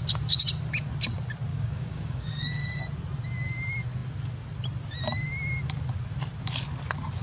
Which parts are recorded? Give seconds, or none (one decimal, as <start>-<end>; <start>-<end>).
0.0-1.5; 2.8-7.2